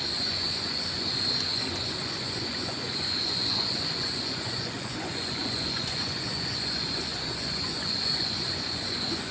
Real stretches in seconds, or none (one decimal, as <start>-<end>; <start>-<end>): none